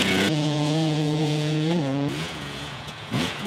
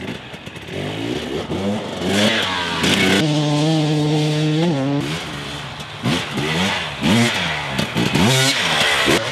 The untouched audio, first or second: second